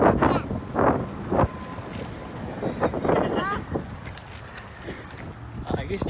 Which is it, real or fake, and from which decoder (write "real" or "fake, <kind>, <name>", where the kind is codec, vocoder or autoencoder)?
real